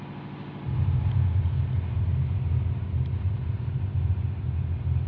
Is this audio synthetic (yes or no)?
no